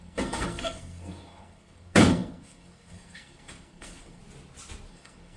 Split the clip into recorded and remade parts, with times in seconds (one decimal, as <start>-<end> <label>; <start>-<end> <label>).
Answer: 0.0-4.2 remade; 4.2-4.9 recorded; 4.9-5.4 remade